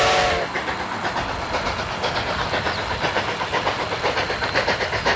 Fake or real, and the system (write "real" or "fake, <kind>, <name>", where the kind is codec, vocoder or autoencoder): real